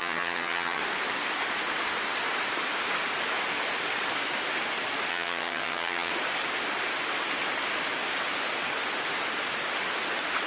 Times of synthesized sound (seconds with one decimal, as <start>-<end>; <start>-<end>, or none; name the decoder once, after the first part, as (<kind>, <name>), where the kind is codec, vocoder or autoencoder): 0.0-0.8 (vocoder, HiFi-GAN); 5.1-6.1